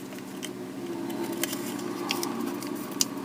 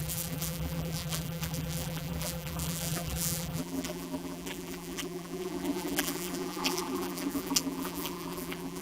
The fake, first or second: second